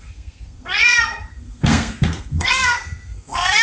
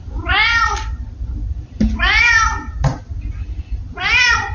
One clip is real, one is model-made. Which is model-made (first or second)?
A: first